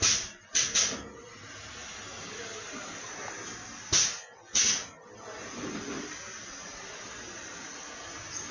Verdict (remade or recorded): recorded